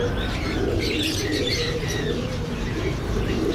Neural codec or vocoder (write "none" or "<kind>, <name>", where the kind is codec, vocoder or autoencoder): vocoder, BigVGAN v2